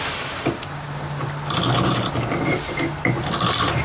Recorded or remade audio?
recorded